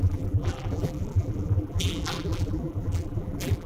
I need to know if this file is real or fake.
fake